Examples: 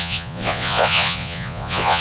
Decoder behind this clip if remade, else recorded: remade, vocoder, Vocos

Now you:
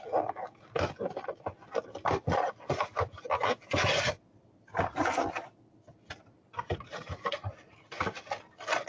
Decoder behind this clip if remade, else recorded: recorded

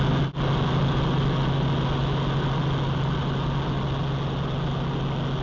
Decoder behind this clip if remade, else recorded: recorded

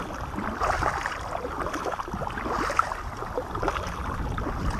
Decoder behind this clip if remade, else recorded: recorded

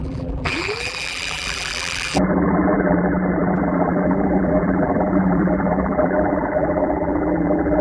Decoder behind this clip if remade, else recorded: remade, vocoder, BigVGAN v2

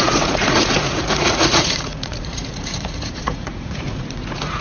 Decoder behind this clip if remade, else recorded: remade, vocoder, Vocos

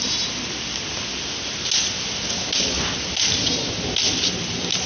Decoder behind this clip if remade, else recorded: recorded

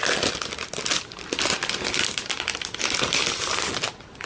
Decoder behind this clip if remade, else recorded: recorded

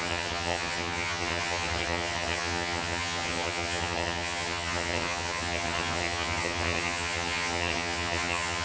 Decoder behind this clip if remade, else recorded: remade, vocoder, HiFi-GAN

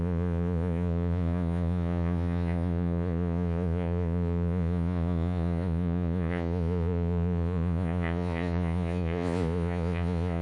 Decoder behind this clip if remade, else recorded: remade, vocoder, Vocos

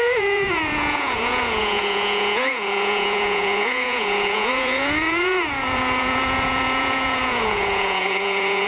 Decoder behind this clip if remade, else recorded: remade, vocoder, Vocos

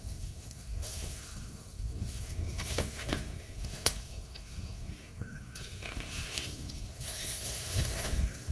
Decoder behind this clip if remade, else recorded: remade, codec, SNAC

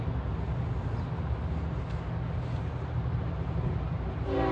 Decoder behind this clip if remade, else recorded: recorded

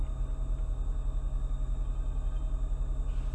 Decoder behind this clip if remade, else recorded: recorded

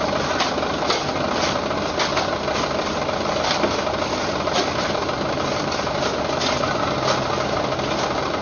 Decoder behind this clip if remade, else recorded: recorded